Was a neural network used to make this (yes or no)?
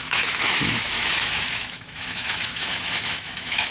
yes